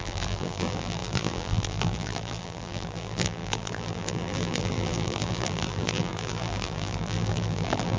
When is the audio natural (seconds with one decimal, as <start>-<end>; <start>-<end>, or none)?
none